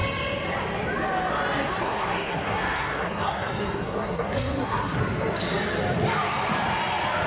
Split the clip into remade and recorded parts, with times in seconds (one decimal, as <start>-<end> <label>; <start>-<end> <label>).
0.0-1.8 recorded; 1.8-5.0 remade; 5.0-7.3 recorded